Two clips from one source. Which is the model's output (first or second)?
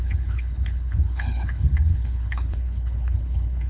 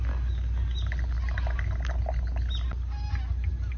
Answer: first